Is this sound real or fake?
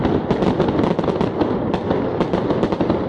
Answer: real